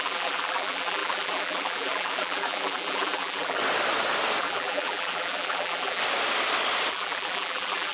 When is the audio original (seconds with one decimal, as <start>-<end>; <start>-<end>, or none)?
3.6-4.4; 6.0-6.9